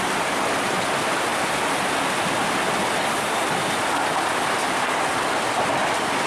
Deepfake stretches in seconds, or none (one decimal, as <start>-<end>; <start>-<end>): none